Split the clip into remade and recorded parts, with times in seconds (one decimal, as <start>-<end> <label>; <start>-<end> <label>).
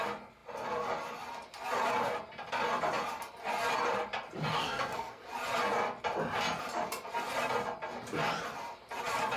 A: 0.0-4.5 recorded; 4.5-5.2 remade; 5.2-9.4 recorded